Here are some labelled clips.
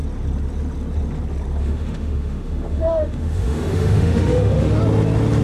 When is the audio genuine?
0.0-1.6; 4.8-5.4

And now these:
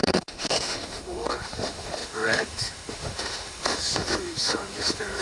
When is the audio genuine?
none

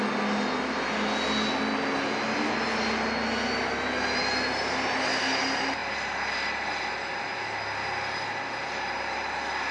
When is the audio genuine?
0.0-9.7

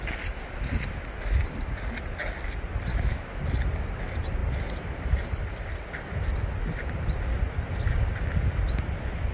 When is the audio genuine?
0.0-2.9; 3.4-9.3

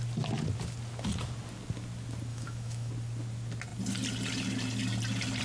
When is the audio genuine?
0.0-2.3; 2.9-5.4

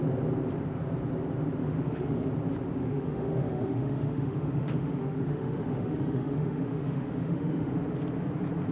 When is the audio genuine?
0.0-1.6; 2.3-2.8; 7.7-8.7

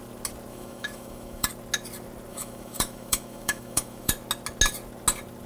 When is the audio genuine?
0.0-0.5; 1.5-2.3; 4.1-5.5